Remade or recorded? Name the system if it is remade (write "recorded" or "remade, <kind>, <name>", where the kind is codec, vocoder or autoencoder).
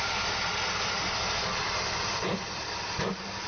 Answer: recorded